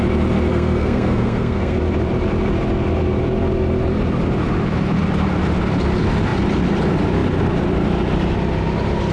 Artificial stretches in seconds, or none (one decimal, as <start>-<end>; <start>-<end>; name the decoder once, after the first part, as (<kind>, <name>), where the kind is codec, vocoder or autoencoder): 0.5-1.8 (codec, SNAC)